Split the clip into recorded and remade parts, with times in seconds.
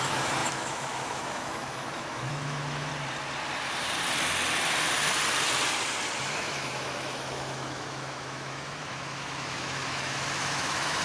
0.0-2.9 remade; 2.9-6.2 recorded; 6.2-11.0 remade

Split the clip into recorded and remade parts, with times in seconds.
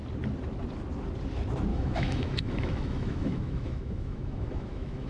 0.0-1.7 recorded; 1.7-5.1 remade